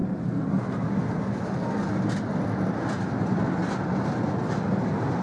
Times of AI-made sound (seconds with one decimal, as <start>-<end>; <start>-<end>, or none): none